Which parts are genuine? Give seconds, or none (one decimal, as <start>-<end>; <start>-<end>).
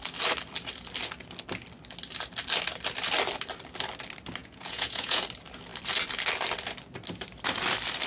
0.0-4.4; 5.2-8.1